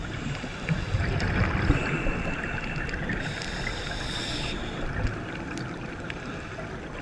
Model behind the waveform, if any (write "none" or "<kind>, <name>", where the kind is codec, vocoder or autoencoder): none